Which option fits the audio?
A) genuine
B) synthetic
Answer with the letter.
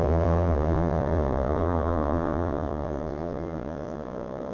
B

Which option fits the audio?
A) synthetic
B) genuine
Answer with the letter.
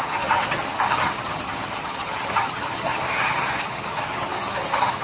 A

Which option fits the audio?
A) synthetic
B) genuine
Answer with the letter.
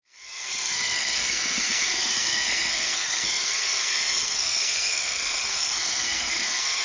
A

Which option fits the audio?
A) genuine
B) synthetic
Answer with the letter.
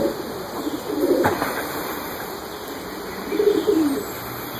A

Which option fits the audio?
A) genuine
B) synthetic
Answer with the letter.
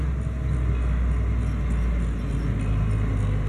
A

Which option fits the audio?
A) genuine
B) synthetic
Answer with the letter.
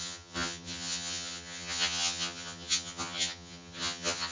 B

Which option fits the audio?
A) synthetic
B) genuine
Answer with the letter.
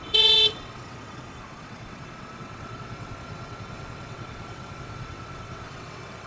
A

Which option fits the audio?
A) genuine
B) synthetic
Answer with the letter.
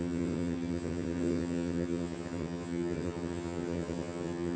B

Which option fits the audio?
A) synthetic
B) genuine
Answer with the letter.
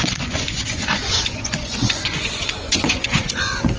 A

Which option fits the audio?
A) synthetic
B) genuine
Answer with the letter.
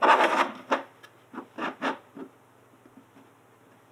B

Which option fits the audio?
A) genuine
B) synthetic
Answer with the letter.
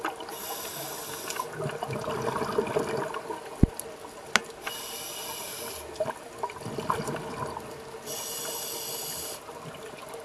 A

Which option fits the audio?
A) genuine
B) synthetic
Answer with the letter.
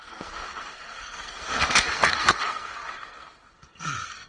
B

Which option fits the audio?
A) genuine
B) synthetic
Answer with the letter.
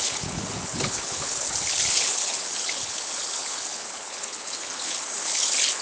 B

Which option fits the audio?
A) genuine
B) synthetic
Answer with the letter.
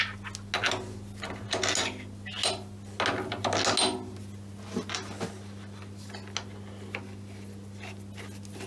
A